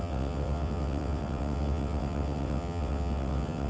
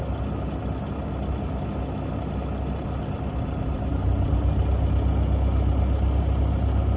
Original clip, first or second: second